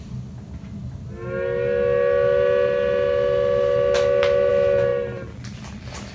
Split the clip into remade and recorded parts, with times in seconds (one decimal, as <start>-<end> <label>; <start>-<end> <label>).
0.0-6.1 recorded